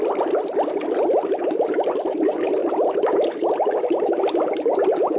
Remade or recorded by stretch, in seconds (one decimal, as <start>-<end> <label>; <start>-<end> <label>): 0.0-5.2 recorded